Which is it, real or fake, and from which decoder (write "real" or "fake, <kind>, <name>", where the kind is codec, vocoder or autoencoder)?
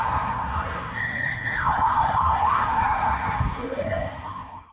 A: fake, codec, SNAC